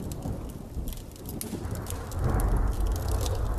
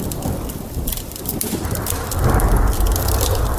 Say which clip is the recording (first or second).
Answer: first